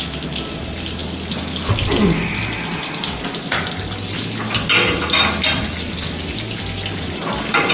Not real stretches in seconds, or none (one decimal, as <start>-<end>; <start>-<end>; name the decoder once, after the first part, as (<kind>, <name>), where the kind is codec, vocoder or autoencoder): none